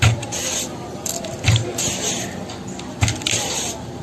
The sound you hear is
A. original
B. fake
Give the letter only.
A